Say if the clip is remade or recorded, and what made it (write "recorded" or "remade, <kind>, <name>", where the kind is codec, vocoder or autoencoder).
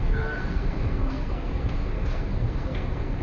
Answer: remade, codec, SNAC